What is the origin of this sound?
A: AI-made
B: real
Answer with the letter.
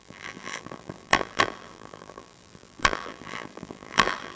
A